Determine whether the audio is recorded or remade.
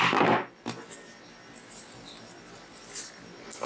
recorded